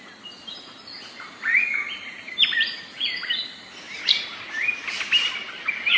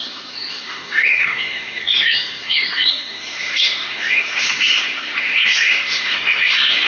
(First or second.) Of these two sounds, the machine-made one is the second